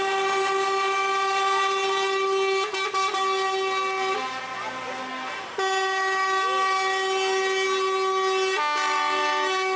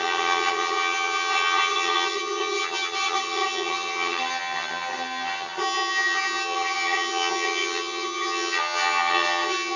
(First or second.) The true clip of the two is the first